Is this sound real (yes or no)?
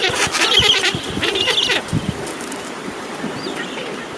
yes